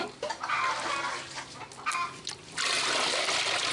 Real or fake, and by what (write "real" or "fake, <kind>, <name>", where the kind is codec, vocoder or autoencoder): real